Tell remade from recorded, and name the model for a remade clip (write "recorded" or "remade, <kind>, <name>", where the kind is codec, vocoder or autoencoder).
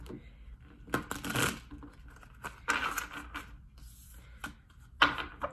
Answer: recorded